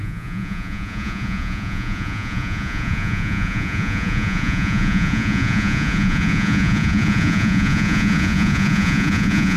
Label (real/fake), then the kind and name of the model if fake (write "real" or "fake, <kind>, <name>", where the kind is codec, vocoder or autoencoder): fake, vocoder, Vocos